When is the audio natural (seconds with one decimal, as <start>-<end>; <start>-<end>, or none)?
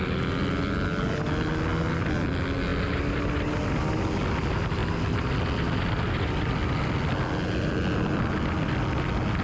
0.0-9.4